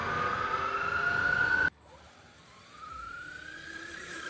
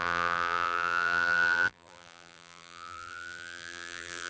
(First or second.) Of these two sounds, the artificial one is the second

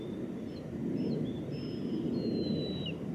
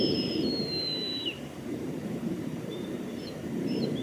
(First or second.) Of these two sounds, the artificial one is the second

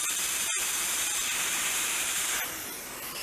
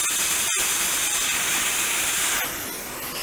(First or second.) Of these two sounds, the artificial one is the first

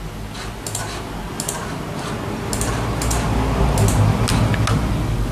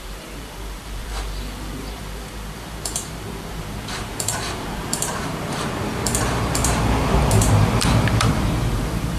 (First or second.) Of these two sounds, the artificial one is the second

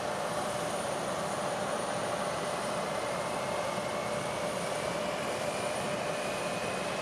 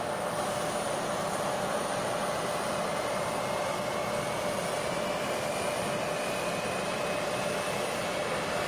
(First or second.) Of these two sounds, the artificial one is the first